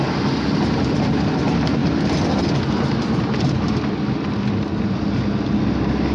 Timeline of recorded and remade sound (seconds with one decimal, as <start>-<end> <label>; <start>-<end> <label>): 0.0-6.1 recorded